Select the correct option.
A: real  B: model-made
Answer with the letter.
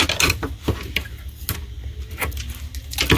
A